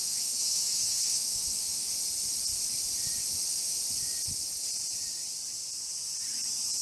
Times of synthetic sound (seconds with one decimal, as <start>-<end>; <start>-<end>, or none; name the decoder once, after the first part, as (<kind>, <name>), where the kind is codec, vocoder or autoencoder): 0.0-1.9 (autoencoder, DAC-VAE)